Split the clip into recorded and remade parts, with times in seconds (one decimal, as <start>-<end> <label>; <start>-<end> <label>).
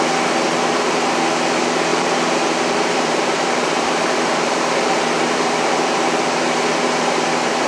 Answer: 0.0-1.9 recorded; 1.9-6.5 remade; 6.5-7.7 recorded